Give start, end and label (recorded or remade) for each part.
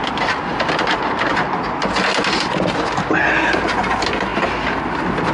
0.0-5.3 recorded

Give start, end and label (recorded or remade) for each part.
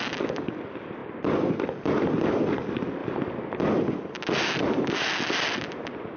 0.0-6.2 recorded